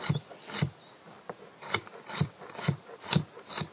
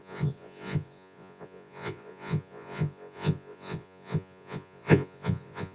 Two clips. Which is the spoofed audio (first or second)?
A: second